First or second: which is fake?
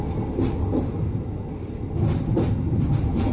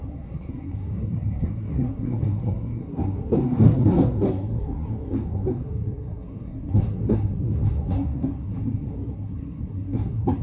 second